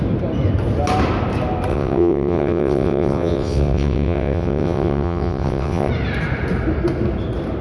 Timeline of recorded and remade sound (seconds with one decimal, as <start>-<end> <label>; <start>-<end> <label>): 0.0-1.7 recorded; 1.7-5.9 remade; 5.9-7.6 recorded